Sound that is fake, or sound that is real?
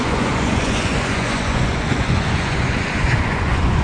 fake